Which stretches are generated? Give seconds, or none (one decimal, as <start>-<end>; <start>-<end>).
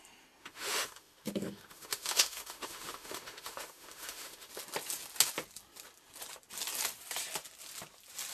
0.4-4.5